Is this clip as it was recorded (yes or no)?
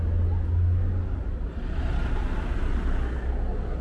yes